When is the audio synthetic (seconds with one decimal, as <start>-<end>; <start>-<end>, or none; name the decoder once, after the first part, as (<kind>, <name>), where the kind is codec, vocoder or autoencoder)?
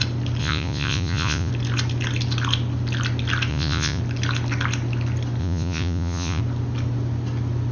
0.4-1.5 (vocoder, Vocos); 3.5-4.0; 5.4-6.4